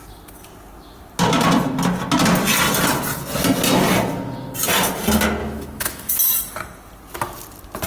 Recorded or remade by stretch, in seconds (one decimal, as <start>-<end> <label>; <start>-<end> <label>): 0.0-5.4 recorded; 5.4-6.1 remade; 6.1-7.9 recorded